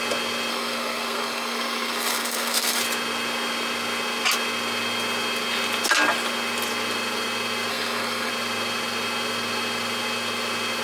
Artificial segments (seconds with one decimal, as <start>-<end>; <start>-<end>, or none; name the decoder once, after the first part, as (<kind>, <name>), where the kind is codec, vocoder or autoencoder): 0.5-2.8 (codec, SNAC); 7.7-8.3